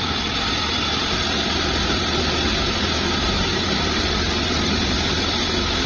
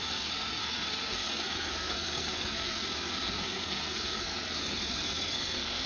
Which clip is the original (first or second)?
first